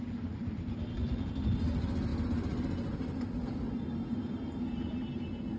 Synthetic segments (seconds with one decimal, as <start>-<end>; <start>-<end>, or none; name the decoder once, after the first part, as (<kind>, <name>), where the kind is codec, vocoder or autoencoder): none